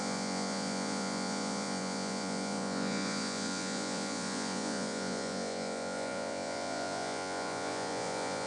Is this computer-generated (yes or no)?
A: yes